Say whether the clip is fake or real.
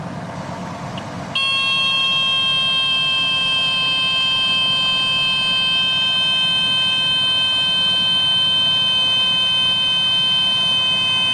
real